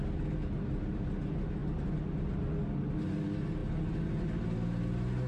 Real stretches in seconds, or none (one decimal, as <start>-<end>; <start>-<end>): 0.0-5.3

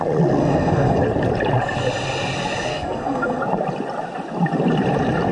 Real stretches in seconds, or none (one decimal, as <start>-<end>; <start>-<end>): 0.0-0.4; 1.0-2.7; 3.4-5.3